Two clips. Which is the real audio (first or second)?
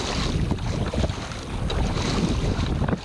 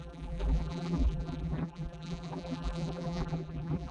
first